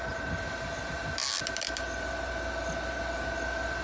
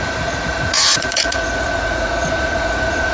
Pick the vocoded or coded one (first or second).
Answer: second